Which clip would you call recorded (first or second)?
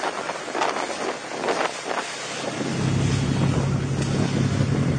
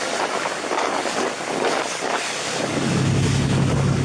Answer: first